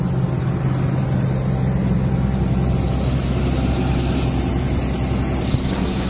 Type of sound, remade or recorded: recorded